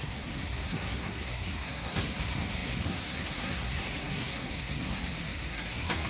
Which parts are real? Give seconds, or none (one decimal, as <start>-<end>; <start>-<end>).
none